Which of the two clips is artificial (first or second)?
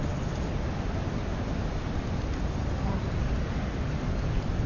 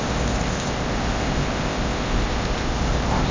second